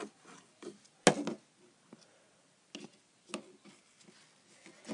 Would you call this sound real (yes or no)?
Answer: yes